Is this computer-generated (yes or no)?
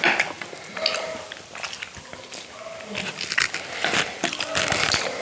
no